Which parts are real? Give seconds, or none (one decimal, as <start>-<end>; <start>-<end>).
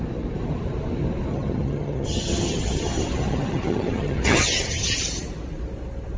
0.0-1.3; 5.0-6.2